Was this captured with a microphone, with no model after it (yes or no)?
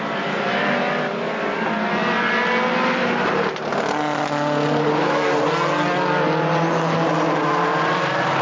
yes